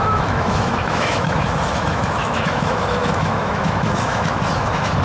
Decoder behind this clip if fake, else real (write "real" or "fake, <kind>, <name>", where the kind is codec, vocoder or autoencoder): fake, autoencoder, DAC-VAE